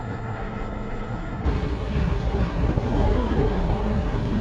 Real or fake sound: fake